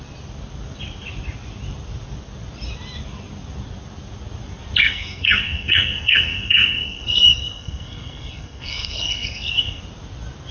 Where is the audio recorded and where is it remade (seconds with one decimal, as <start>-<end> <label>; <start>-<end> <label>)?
0.0-4.8 recorded; 4.8-9.8 remade; 9.8-10.5 recorded